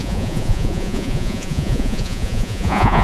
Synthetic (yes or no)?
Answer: yes